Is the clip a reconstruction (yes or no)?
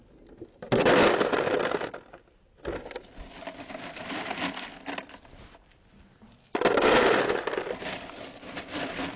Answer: no